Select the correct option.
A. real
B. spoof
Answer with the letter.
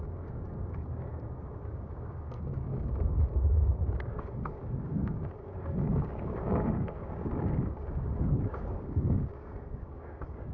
B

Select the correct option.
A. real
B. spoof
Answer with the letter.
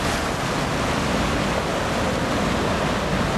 A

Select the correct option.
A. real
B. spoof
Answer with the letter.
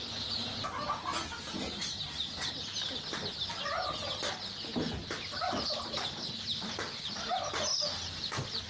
A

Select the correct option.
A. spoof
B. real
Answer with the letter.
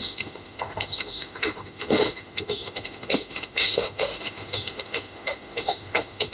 A